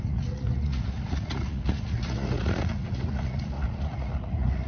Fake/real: fake